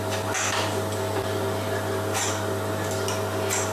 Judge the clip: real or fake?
real